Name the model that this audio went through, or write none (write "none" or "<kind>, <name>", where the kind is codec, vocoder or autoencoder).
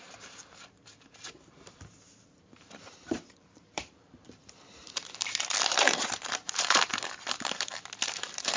vocoder, BigVGAN v2